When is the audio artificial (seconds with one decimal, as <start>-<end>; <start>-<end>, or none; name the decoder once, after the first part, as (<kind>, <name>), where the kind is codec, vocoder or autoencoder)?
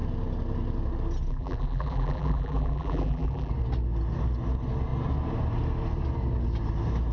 1.3-3.5 (vocoder, BigVGAN v2)